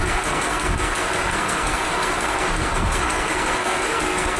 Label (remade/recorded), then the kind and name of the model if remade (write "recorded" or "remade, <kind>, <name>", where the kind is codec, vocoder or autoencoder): remade, codec, SNAC